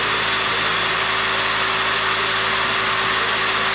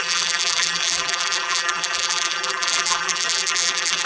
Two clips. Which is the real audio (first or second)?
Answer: first